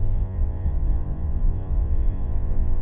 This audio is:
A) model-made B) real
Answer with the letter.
A